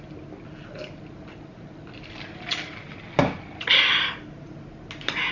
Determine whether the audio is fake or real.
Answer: real